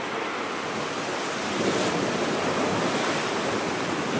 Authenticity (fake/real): real